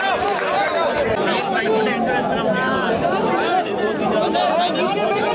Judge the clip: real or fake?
real